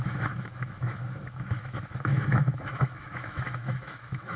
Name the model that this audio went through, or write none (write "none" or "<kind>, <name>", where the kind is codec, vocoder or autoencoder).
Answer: autoencoder, DAC-VAE